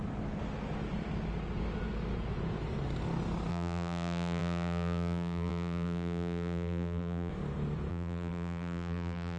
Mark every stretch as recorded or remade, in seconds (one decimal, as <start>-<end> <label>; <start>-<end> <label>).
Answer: 0.0-3.5 recorded; 3.5-7.3 remade; 7.3-7.9 recorded; 7.9-9.4 remade